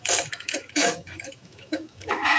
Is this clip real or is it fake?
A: fake